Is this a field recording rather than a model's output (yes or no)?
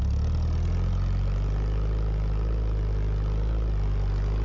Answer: yes